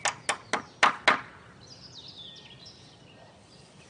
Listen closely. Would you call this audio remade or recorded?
recorded